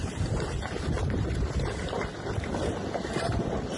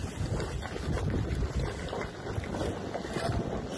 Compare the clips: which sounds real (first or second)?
second